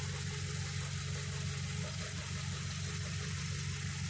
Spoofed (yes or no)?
no